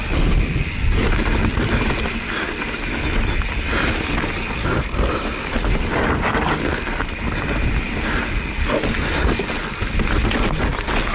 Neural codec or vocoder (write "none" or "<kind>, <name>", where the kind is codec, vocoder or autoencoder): none